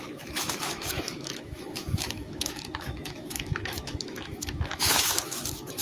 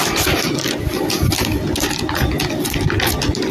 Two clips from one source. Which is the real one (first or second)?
second